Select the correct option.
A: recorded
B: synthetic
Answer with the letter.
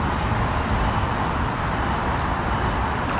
A